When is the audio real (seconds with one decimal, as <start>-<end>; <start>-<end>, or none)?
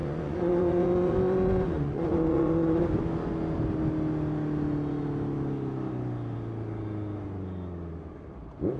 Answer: 2.8-8.8